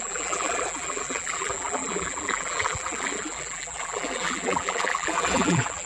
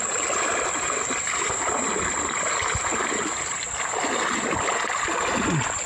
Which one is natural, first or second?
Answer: second